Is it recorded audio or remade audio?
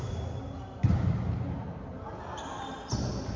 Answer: recorded